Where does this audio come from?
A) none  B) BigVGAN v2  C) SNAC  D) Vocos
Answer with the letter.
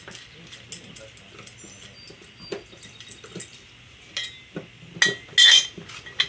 A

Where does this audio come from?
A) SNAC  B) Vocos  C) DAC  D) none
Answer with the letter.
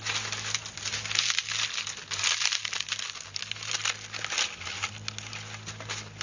D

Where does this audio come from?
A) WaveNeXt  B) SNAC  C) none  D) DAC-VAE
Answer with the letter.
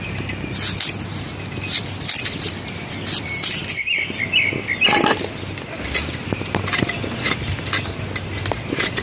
C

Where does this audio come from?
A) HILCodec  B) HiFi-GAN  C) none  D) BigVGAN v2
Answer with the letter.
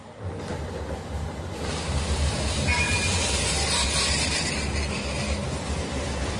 C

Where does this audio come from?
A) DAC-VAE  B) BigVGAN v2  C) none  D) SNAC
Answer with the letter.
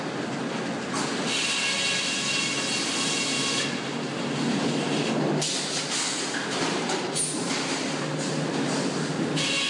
C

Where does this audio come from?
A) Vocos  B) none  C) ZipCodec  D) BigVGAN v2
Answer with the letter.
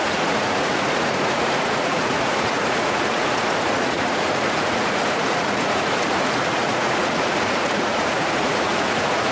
A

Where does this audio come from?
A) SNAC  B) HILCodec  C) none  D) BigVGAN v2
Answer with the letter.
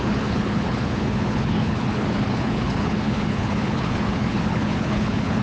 B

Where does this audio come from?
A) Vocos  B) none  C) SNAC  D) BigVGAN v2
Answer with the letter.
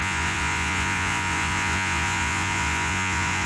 A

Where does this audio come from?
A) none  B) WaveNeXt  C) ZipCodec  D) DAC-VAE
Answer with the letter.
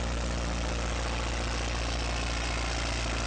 A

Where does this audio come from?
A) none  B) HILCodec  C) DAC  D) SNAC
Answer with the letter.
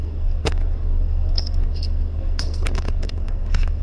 D